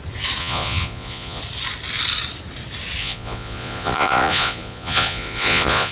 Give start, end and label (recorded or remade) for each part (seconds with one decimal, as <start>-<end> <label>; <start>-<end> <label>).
0.0-0.4 recorded; 0.4-1.4 remade; 1.4-3.0 recorded; 3.0-5.9 remade

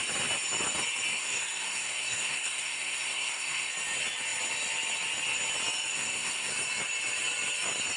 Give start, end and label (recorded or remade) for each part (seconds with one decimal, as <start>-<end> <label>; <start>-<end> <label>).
0.0-1.1 recorded; 1.1-3.7 remade; 3.7-5.9 recorded; 5.9-6.5 remade; 6.5-8.0 recorded

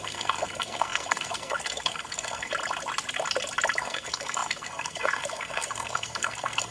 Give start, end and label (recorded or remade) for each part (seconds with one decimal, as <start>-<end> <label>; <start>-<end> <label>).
0.0-2.5 remade; 2.5-3.8 recorded; 3.8-6.7 remade

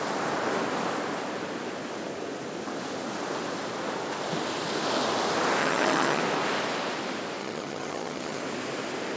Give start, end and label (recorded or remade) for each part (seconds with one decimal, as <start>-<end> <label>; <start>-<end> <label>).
0.0-5.6 recorded; 5.6-6.2 remade; 6.2-7.4 recorded; 7.4-8.4 remade; 8.4-9.2 recorded

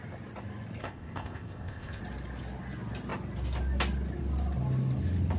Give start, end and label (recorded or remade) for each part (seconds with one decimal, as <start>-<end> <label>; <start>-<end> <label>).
0.0-0.8 recorded; 0.8-2.0 remade; 2.0-5.4 recorded

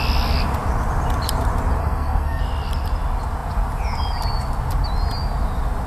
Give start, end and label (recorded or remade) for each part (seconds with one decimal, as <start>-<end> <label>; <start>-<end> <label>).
0.0-1.8 recorded; 1.8-2.4 remade; 2.4-5.9 recorded